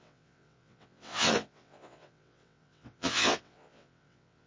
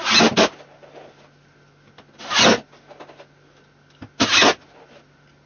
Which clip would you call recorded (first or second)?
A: second